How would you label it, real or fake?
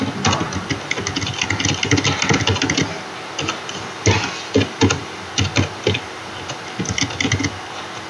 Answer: real